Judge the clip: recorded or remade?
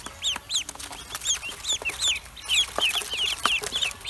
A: recorded